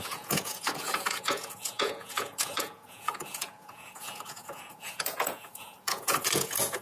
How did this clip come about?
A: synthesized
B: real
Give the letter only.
A